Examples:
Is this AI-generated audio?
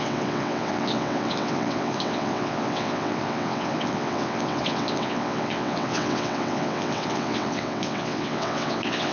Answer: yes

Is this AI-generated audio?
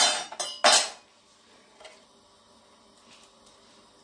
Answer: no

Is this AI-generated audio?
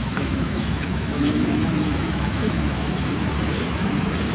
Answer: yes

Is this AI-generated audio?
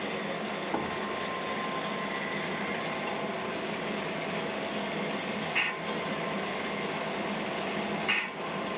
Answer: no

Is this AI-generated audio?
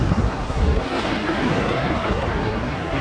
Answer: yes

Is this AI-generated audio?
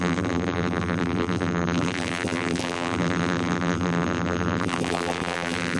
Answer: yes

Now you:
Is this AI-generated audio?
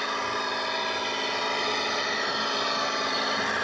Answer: no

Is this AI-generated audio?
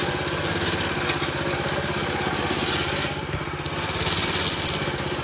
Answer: no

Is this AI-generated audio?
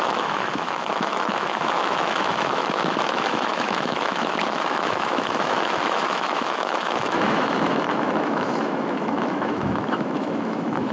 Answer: yes